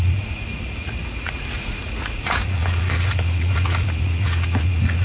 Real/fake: fake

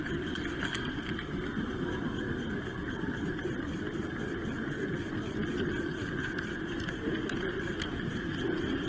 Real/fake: real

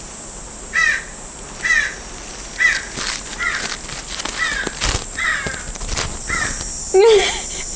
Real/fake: real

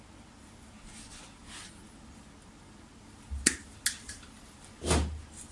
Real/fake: real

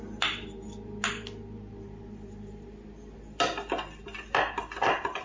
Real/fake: real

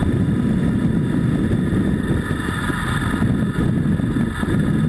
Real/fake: real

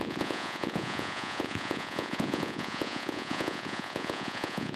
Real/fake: fake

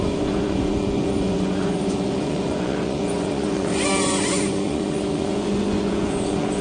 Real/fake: fake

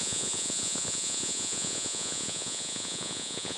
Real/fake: fake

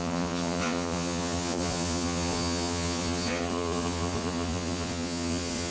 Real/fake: fake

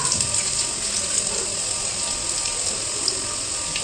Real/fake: real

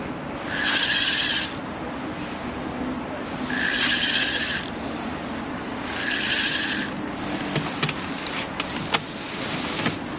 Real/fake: real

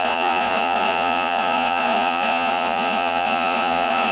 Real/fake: fake